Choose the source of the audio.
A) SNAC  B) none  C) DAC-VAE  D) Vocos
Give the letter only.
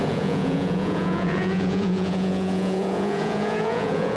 D